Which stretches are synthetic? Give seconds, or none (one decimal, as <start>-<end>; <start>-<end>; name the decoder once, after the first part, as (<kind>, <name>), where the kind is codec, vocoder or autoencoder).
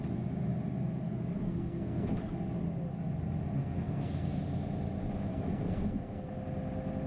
1.3-2.1 (codec, SNAC); 3.6-4.4; 5.3-6.3